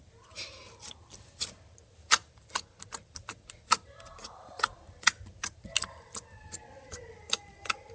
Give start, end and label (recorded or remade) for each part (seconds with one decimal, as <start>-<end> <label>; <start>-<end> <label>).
0.0-4.2 recorded; 4.2-4.8 remade; 4.8-7.9 recorded

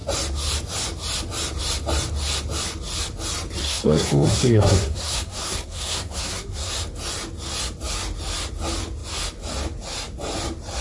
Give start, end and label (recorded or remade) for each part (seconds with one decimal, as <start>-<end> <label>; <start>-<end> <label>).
0.0-3.6 recorded; 3.6-6.7 remade; 6.7-10.8 recorded

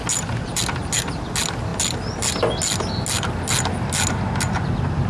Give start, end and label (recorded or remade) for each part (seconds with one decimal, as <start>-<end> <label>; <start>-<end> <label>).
0.0-5.1 recorded

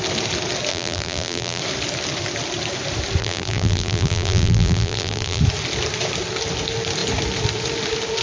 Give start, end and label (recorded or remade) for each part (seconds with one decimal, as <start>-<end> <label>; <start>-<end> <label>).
0.0-0.7 recorded; 0.7-1.6 remade; 1.6-3.2 recorded; 3.2-5.4 remade; 5.4-8.2 recorded

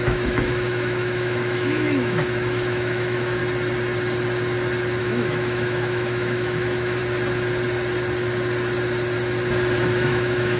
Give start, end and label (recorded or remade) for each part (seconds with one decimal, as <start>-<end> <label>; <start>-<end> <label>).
0.0-3.4 remade; 3.4-5.0 recorded; 5.0-7.0 remade; 7.0-9.8 recorded; 9.8-10.6 remade

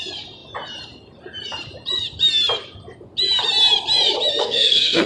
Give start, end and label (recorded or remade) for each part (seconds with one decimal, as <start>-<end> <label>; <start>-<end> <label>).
0.0-4.4 recorded; 4.4-5.1 remade

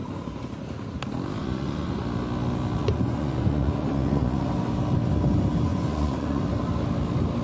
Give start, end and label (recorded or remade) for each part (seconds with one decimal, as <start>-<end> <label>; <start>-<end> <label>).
0.0-1.4 recorded; 1.4-2.0 remade; 2.0-2.8 recorded; 2.8-4.5 remade; 4.5-5.7 recorded; 5.7-6.4 remade; 6.4-7.4 recorded

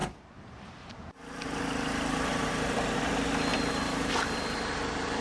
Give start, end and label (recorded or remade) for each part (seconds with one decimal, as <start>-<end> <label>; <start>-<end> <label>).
0.0-3.1 remade; 3.1-3.5 recorded; 3.5-4.1 remade; 4.1-5.2 recorded